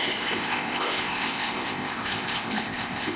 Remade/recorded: remade